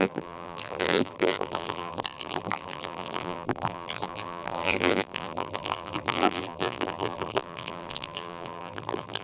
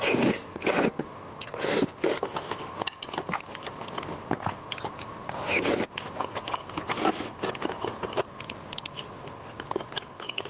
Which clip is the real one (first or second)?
second